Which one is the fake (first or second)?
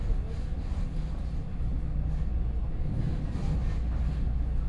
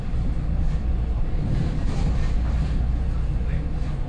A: second